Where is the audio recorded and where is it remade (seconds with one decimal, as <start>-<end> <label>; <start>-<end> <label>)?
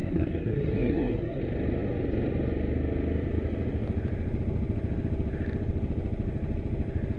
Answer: 0.0-1.4 remade; 1.4-7.2 recorded